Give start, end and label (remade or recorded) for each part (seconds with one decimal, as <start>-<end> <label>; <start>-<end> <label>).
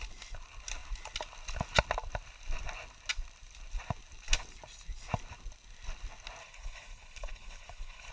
0.0-6.4 recorded; 6.4-8.1 remade